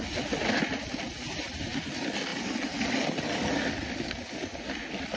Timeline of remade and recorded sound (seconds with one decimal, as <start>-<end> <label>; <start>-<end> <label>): 0.0-5.2 recorded